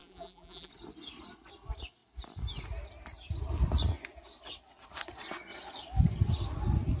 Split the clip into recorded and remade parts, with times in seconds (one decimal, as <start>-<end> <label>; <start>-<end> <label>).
0.0-0.7 remade; 0.7-7.0 recorded